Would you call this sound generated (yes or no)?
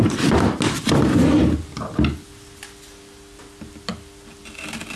no